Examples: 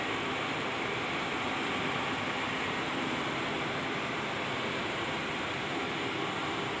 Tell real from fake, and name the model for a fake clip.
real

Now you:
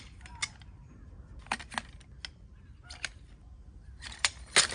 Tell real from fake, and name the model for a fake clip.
real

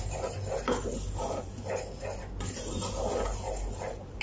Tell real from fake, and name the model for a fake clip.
real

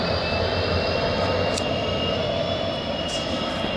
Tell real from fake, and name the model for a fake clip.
real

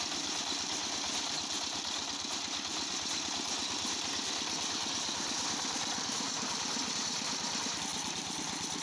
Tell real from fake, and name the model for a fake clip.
fake, vocoder, BigVGAN v2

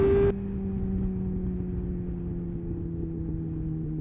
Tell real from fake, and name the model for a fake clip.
real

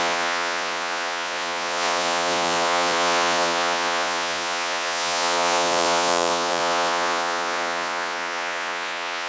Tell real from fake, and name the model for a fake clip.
fake, vocoder, Vocos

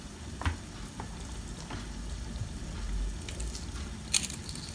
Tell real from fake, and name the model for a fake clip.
real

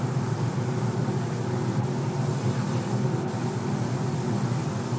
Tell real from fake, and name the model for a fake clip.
real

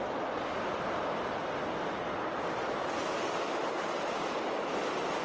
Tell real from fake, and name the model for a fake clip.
real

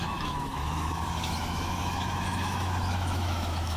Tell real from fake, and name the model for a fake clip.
fake, autoencoder, DAC-VAE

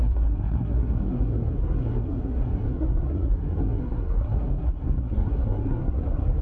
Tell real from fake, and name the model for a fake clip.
fake, codec, SNAC